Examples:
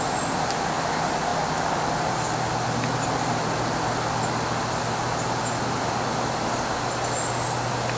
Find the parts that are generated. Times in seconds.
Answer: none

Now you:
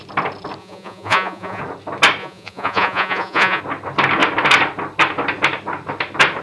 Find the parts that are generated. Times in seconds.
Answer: 0.6-1.6 (vocoder, Vocos); 2.2-3.6

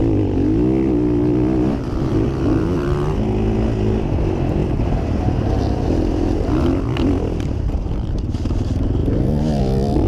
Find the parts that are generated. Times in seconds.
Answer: 0.0-2.1 (vocoder, BigVGAN v2); 4.6-8.2

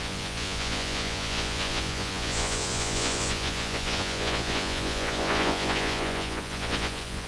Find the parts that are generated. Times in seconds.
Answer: 0.0-7.3 (vocoder, Vocos)

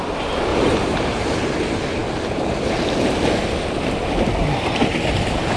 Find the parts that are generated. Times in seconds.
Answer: 0.5-1.4 (vocoder, BigVGAN v2)